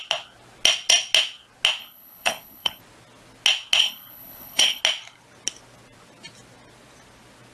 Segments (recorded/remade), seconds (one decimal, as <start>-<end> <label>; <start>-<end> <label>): 0.0-1.8 recorded; 1.8-2.8 remade; 2.8-3.8 recorded; 3.8-4.8 remade; 4.8-7.5 recorded